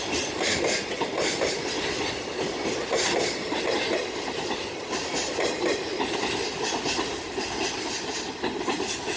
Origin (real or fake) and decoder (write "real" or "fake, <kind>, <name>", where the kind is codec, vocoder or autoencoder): real